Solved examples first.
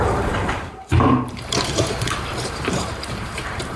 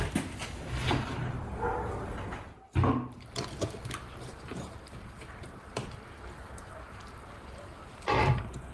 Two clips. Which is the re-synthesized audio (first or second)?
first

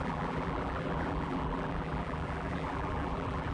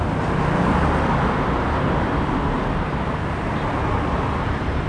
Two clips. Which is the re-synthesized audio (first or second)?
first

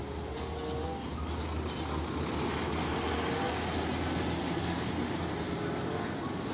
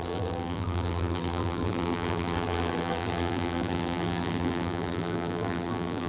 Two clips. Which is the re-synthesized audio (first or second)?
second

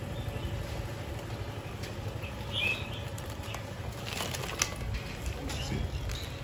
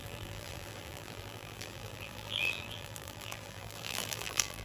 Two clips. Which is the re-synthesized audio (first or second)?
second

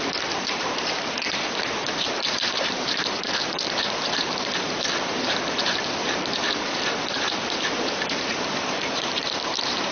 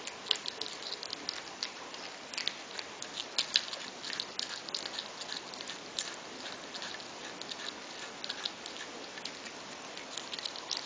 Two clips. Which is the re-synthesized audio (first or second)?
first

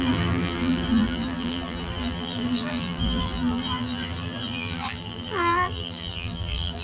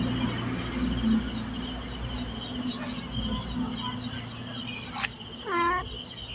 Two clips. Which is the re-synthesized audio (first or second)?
first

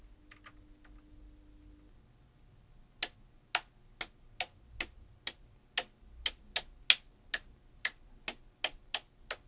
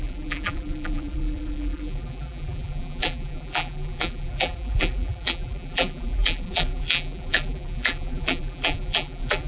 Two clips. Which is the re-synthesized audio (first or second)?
second